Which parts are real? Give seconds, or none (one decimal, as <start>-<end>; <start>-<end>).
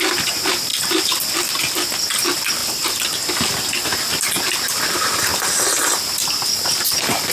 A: 0.0-0.7; 1.5-7.3